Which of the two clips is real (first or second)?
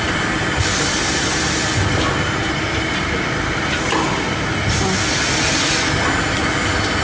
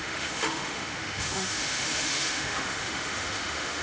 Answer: first